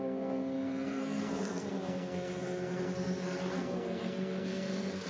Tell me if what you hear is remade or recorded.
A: remade